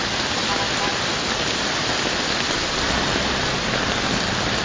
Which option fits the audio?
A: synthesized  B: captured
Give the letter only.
B